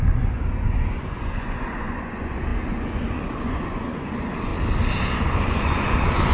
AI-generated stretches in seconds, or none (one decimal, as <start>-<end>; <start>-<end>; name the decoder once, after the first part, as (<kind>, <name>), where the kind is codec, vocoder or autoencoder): 0.0-4.5 (vocoder, Vocos); 5.1-6.3